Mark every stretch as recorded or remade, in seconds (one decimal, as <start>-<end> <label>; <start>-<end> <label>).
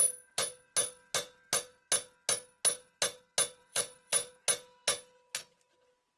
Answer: 0.0-3.6 recorded; 3.6-4.3 remade; 4.3-6.2 recorded